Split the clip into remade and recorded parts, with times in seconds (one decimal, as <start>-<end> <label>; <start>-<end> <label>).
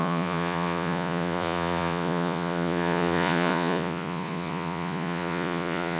0.0-6.0 remade